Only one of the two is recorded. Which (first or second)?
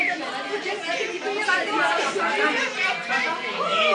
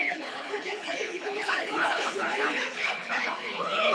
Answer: first